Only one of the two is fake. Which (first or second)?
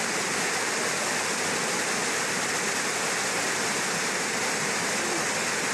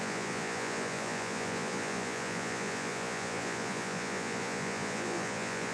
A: second